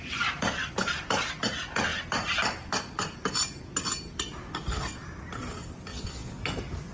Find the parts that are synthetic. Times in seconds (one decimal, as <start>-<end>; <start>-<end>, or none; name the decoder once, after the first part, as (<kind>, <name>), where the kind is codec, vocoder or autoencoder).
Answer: 5.9-6.4 (vocoder, Vocos)